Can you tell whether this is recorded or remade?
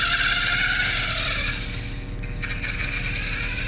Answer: recorded